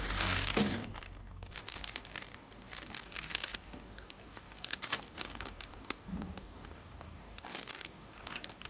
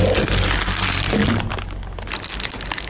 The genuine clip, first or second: second